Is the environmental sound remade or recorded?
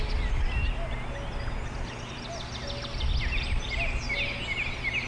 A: recorded